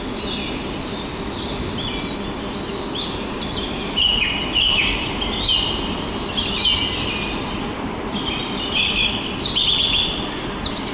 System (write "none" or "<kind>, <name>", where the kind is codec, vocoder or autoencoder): none